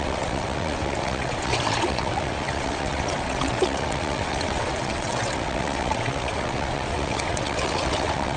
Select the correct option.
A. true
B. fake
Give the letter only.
B